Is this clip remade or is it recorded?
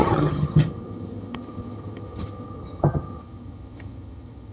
remade